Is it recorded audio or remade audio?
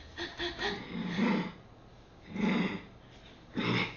recorded